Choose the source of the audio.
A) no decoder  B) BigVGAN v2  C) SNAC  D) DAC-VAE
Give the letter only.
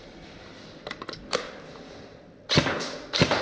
A